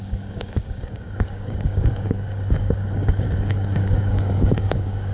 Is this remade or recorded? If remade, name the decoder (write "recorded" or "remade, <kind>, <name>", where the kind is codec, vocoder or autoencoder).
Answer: remade, codec, DAC